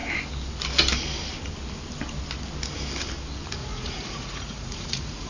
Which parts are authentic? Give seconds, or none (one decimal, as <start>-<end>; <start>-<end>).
0.0-3.6